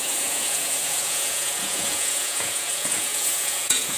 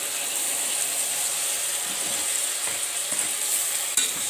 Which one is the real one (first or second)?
second